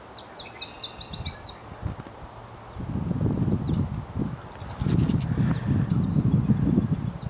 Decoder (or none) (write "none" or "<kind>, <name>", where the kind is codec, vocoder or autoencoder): none